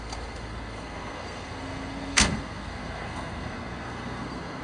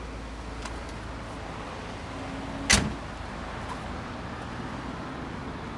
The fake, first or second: first